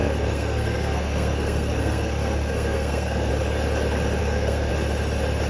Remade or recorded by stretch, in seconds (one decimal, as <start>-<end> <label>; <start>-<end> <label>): 0.0-3.3 remade; 3.3-4.2 recorded; 4.2-4.7 remade; 4.7-5.5 recorded